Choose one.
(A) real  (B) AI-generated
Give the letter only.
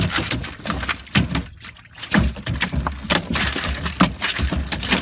A